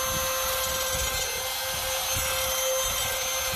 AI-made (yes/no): no